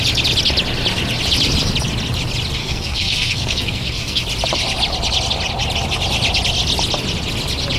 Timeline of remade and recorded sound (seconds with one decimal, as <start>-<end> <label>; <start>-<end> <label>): 0.0-2.6 recorded; 2.6-4.2 remade; 4.2-7.8 recorded